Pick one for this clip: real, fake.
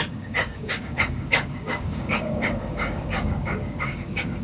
fake